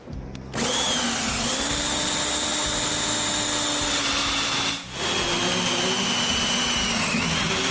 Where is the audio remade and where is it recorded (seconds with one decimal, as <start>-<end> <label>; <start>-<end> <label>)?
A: 0.0-7.7 recorded